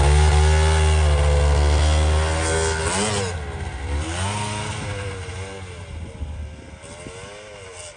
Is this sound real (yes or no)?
yes